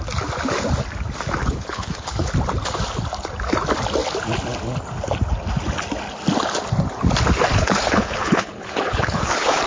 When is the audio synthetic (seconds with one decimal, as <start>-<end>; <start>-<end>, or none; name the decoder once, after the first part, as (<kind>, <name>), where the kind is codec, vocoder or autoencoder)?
1.4-2.3 (codec, HILCodec); 7.5-9.7